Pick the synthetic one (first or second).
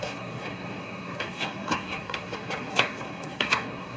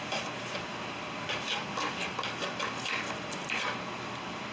first